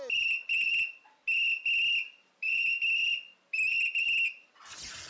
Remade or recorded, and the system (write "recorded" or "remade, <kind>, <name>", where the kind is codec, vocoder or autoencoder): recorded